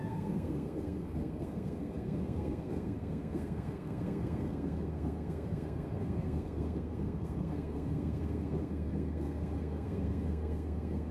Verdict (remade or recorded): remade